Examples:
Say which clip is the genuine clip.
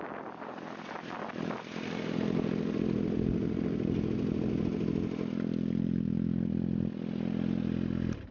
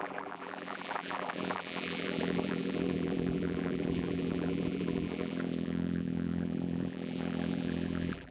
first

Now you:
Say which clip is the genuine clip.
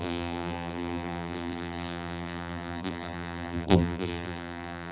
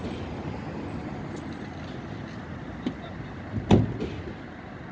second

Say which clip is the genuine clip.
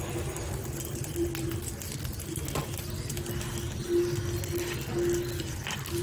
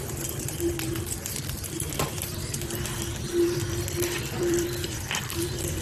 first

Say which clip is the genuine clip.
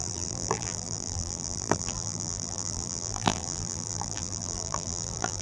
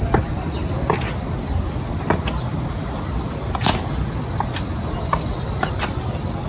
second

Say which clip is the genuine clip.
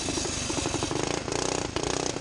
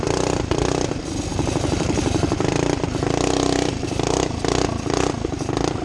first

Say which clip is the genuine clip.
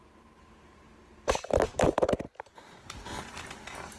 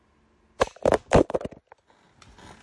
second